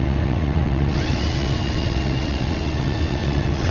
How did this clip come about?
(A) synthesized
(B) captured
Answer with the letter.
A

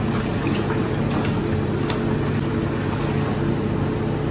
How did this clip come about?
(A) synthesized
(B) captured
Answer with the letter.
B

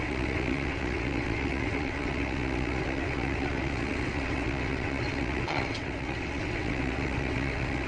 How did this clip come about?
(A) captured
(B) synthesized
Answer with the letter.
B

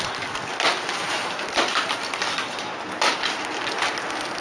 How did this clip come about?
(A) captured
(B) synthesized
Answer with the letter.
A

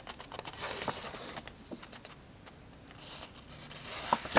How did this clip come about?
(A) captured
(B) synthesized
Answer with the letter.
A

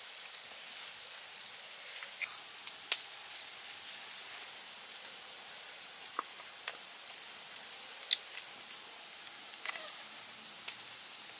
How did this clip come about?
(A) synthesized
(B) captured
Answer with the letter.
B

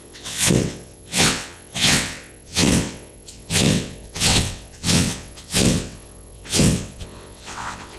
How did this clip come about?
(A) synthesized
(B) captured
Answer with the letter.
A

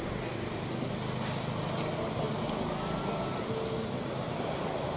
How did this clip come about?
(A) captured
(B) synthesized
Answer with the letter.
A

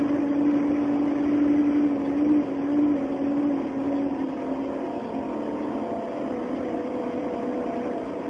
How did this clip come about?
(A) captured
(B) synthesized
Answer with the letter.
A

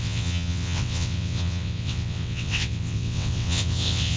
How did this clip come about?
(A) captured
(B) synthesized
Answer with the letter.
B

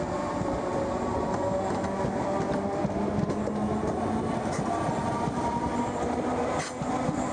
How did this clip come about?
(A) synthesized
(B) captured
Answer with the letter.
B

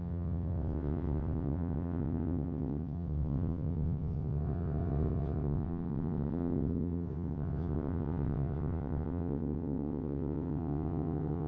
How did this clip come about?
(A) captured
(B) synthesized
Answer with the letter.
B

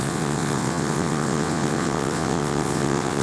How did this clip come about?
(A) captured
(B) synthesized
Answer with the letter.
B